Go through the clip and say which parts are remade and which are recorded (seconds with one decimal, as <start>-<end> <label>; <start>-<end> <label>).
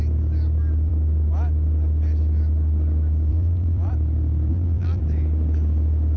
0.0-3.3 recorded; 3.3-3.9 remade; 3.9-4.5 recorded; 4.5-5.0 remade; 5.0-6.2 recorded